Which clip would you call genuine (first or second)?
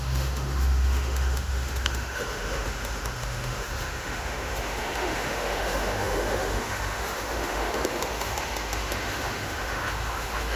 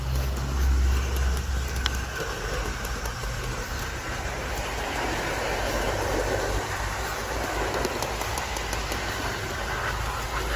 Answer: second